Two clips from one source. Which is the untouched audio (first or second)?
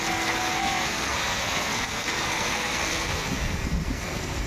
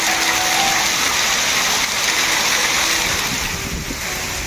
second